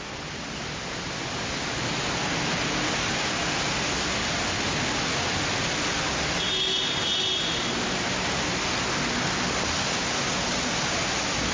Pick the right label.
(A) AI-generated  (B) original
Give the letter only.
B